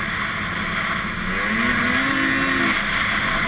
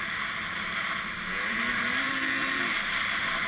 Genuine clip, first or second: first